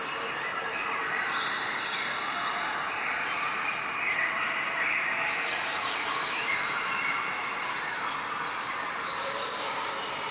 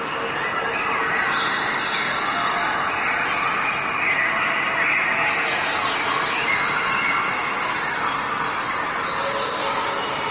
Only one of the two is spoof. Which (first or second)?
first